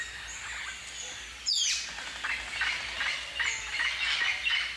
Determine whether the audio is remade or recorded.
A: recorded